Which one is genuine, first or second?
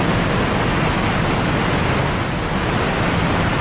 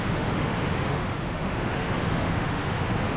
first